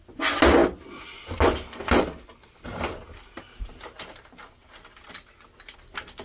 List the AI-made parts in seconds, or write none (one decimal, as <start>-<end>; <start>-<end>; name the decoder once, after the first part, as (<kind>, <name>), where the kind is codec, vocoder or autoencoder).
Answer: none